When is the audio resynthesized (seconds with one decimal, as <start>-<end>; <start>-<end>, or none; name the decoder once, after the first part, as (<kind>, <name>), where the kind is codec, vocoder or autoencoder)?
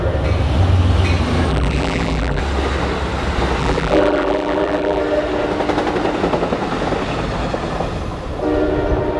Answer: 1.5-2.4 (vocoder, BigVGAN v2); 3.6-5.0